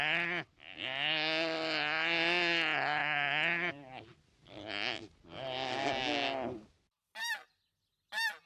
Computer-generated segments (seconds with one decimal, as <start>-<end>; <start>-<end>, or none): 3.0-3.7